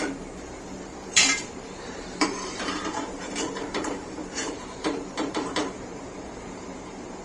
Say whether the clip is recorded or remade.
remade